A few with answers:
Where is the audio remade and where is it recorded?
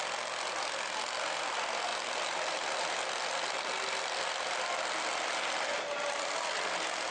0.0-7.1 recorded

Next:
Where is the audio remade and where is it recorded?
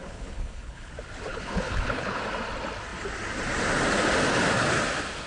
0.0-0.9 remade; 0.9-1.3 recorded; 1.3-2.2 remade; 2.2-5.3 recorded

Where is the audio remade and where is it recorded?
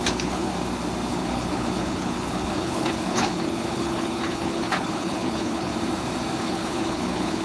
0.0-0.5 remade; 0.5-1.1 recorded; 1.1-5.7 remade; 5.7-6.4 recorded; 6.4-7.4 remade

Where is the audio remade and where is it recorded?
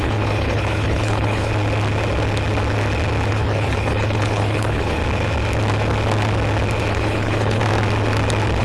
0.0-1.5 remade; 1.5-3.3 recorded; 3.3-5.0 remade; 5.0-6.9 recorded; 6.9-7.6 remade; 7.6-8.6 recorded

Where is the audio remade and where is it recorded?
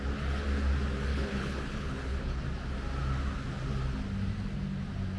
0.0-1.1 recorded; 1.1-2.4 remade; 2.4-5.2 recorded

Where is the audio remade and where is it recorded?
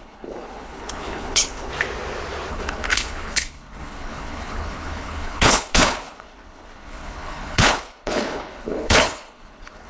0.0-1.7 remade; 1.7-2.5 recorded; 2.5-9.9 remade